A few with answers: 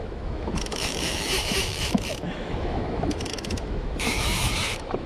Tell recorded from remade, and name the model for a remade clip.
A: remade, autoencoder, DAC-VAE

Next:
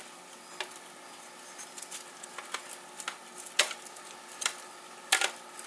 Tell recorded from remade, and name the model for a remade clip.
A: recorded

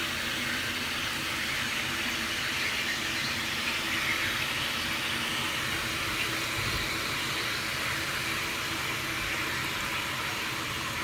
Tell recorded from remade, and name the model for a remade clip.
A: recorded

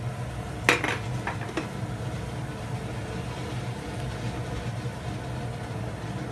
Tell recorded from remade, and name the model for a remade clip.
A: recorded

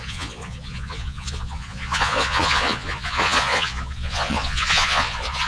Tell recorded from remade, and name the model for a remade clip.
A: remade, vocoder, Vocos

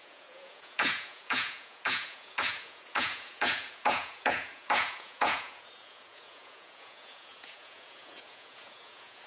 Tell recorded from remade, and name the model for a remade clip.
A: remade, vocoder, Vocos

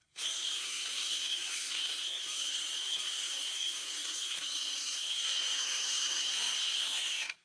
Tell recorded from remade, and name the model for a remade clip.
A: remade, codec, SNAC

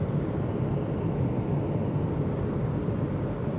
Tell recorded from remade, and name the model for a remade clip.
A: recorded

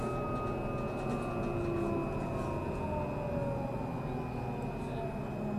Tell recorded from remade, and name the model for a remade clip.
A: recorded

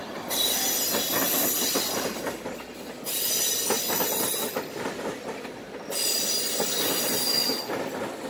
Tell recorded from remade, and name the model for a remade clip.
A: recorded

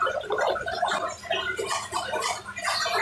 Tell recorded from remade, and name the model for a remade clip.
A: recorded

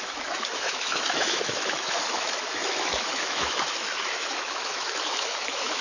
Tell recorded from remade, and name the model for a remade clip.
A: remade, autoencoder, DAC-VAE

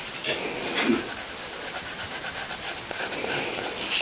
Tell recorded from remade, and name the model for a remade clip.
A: recorded